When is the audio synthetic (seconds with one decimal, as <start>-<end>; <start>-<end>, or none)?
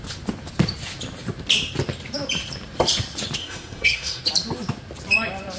3.4-4.2